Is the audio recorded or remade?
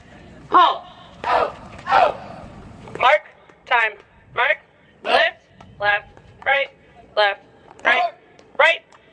remade